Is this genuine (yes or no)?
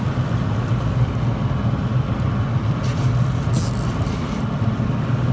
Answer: yes